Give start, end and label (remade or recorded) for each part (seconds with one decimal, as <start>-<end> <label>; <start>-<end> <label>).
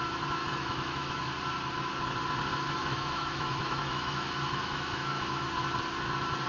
0.0-0.4 recorded; 0.4-1.2 remade; 1.2-2.8 recorded; 2.8-5.4 remade; 5.4-6.5 recorded